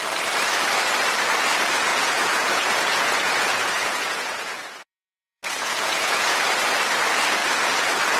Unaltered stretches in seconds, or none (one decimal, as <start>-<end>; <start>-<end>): 0.0-1.9; 6.4-8.2